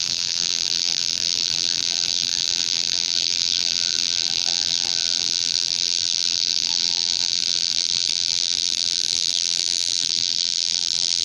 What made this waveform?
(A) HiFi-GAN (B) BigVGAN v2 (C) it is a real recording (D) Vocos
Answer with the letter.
B